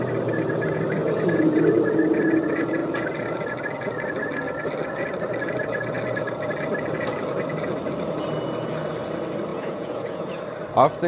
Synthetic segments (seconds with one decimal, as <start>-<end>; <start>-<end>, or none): 9.5-10.4

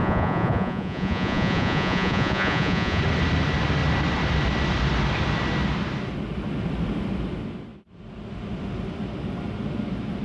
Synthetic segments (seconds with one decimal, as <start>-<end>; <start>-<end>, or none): 0.0-3.0

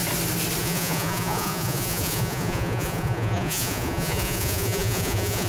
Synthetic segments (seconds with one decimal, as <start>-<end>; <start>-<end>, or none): 0.6-5.5

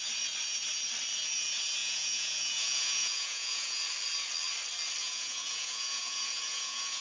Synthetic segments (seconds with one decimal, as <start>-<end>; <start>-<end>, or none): 1.8-3.8; 5.0-7.0

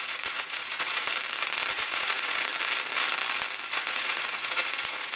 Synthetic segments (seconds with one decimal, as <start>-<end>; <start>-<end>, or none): 0.0-1.1; 1.7-2.5; 3.7-5.2

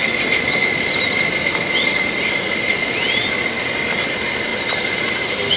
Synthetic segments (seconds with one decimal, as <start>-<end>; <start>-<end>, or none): none

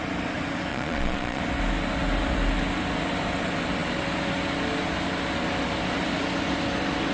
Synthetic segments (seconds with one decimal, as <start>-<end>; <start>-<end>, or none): 0.7-1.4

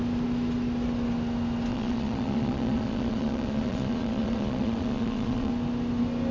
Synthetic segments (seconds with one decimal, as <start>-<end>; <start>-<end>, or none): 1.7-5.5